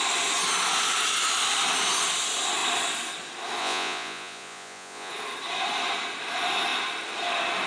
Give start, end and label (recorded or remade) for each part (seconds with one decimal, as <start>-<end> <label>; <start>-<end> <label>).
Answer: 0.0-3.6 recorded; 3.6-5.1 remade; 5.1-7.7 recorded